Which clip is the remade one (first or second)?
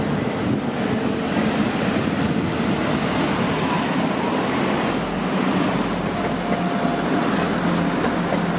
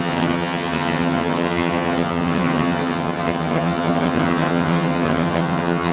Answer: second